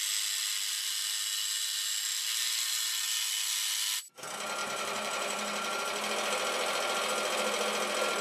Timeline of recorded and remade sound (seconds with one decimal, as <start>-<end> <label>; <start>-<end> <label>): 0.0-4.6 recorded; 4.6-5.8 remade; 5.8-8.2 recorded

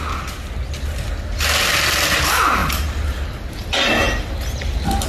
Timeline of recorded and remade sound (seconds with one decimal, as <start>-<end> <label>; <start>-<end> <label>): 0.0-5.1 recorded

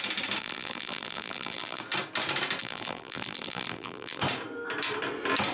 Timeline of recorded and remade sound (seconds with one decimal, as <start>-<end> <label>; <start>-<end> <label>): 0.0-0.4 recorded; 0.4-1.8 remade; 1.8-2.6 recorded; 2.6-4.2 remade; 4.2-5.5 recorded

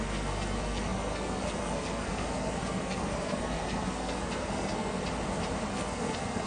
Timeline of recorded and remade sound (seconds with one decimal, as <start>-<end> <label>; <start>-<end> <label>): 0.0-5.0 remade; 5.0-5.7 recorded; 5.7-6.5 remade